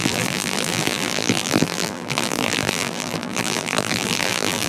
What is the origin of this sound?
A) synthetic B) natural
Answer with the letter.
A